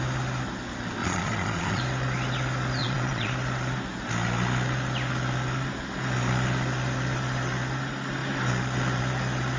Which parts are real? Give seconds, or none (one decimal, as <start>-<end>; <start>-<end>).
0.0-1.0; 1.8-2.8; 3.3-9.6